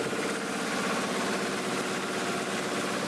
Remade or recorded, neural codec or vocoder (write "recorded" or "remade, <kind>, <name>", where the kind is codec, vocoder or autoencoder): recorded